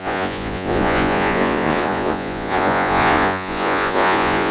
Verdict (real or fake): fake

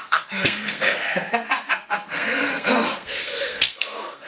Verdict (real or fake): fake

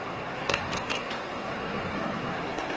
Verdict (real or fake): fake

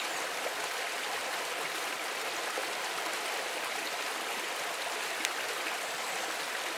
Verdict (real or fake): real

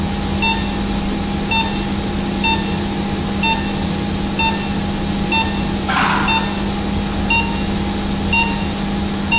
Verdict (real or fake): real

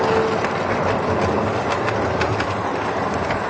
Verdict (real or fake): real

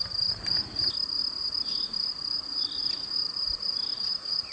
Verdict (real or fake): real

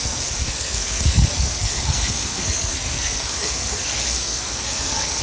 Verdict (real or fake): fake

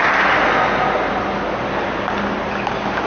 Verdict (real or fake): real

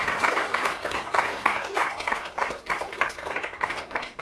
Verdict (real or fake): fake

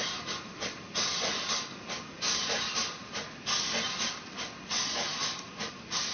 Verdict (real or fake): real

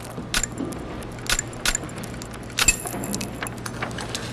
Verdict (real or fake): real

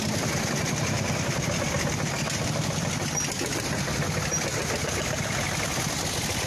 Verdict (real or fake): real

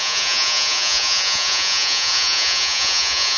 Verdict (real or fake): fake